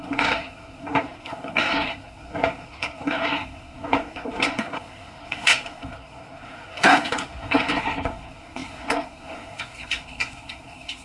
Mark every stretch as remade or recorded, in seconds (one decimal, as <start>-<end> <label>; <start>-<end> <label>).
0.0-11.0 remade